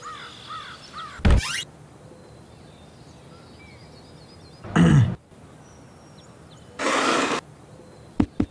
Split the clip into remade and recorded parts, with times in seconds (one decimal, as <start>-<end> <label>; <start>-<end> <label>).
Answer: 0.0-8.5 recorded

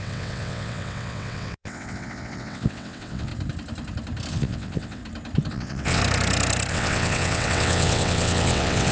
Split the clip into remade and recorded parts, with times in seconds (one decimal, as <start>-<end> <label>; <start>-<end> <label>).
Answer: 0.0-3.3 remade; 3.3-4.3 recorded; 4.3-5.0 remade; 5.0-5.5 recorded; 5.5-6.0 remade; 6.0-6.7 recorded; 6.7-8.9 remade